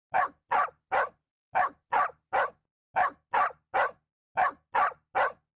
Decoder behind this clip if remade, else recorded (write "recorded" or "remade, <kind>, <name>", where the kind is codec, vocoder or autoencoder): recorded